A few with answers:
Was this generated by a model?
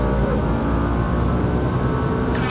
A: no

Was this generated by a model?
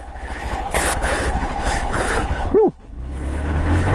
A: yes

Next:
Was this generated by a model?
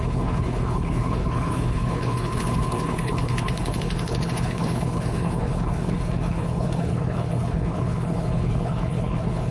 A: yes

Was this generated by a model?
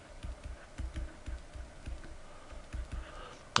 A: no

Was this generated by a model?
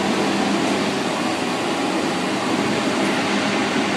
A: no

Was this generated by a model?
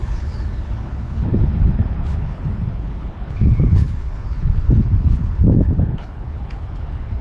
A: yes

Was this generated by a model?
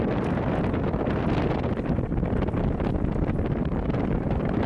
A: no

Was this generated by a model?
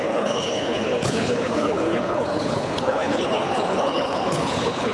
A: yes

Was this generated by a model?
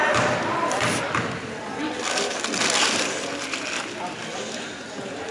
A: no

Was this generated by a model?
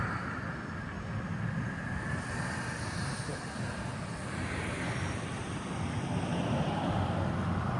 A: no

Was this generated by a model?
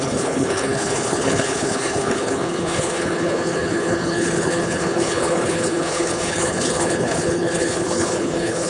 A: yes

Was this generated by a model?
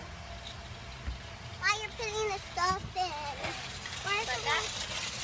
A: no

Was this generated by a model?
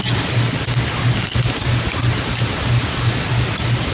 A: no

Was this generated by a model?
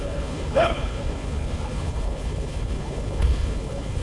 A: yes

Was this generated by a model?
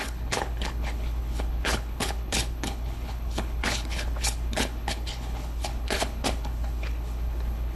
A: yes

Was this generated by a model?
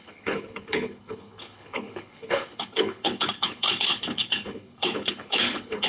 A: yes